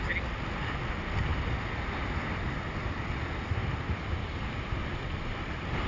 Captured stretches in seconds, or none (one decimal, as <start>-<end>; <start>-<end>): 0.0-5.9